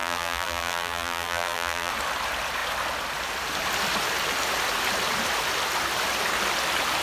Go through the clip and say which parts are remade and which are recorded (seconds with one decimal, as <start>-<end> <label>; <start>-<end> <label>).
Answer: 0.0-1.9 remade; 1.9-7.0 recorded